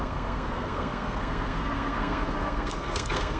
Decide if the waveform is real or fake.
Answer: fake